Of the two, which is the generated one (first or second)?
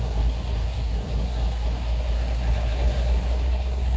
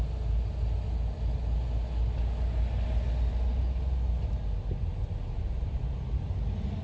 first